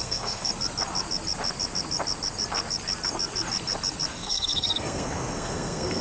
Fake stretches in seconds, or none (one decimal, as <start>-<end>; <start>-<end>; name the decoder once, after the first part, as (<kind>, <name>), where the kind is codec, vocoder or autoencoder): 0.0-0.5 (codec, SNAC); 4.1-6.0

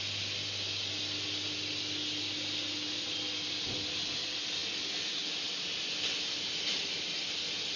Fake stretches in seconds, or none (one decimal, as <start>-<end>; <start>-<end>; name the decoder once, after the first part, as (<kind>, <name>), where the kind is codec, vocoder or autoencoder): none

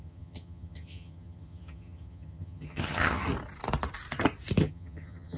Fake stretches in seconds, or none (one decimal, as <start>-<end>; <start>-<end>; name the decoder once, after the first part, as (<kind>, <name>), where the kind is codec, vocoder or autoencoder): 0.0-3.2 (vocoder, HiFi-GAN); 4.6-5.4

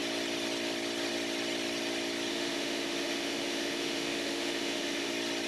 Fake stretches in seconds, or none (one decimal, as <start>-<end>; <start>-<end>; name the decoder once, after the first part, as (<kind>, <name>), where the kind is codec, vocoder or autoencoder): 2.3-5.1 (autoencoder, DAC-VAE)

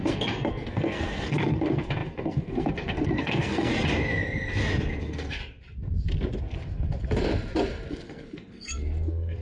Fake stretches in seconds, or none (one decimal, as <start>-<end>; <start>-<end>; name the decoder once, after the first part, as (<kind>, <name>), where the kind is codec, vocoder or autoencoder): 0.0-3.7 (codec, SNAC); 5.0-5.4; 7.9-9.4

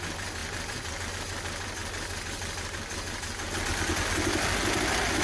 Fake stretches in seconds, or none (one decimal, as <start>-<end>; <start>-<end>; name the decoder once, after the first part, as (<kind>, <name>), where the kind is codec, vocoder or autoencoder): none